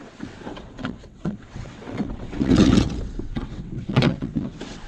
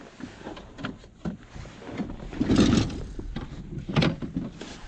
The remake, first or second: first